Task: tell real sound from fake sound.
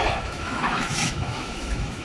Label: fake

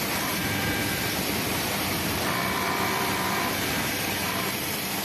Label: fake